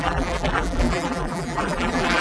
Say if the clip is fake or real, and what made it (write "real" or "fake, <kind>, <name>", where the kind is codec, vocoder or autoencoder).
fake, vocoder, BigVGAN v2